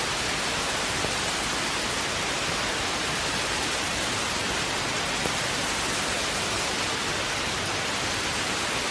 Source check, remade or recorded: recorded